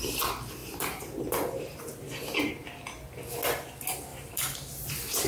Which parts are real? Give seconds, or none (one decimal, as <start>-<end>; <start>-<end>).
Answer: 0.0-0.6; 2.1-4.1